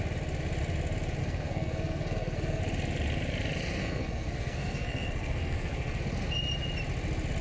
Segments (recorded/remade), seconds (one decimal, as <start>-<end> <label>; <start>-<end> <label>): 0.0-1.2 recorded; 1.2-2.6 remade; 2.6-3.8 recorded; 3.8-6.0 remade; 6.0-7.4 recorded